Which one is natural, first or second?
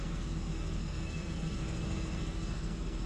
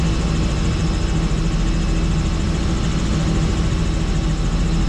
second